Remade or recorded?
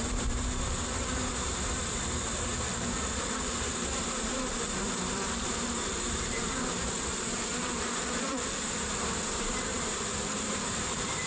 remade